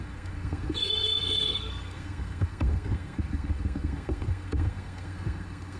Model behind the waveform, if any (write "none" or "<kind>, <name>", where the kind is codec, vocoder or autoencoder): codec, SNAC